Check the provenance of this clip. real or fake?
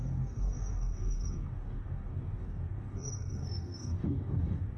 fake